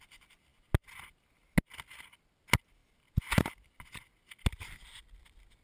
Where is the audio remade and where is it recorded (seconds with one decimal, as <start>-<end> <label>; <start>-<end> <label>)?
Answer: 0.0-5.6 recorded